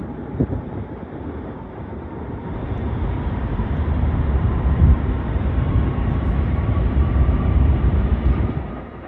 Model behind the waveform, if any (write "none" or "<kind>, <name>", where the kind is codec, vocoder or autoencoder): vocoder, BigVGAN v2